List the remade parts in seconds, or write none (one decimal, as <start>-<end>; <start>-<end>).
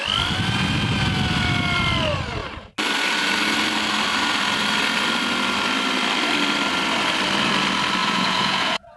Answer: 8.0-9.0